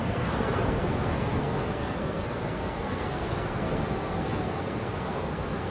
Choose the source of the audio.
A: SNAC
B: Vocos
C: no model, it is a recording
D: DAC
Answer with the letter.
A